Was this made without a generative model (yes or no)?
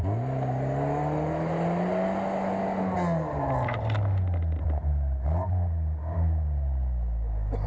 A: yes